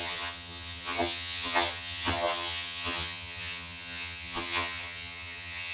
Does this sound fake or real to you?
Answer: fake